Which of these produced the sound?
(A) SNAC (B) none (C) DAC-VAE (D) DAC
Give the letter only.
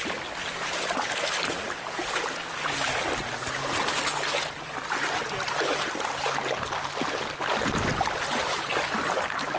B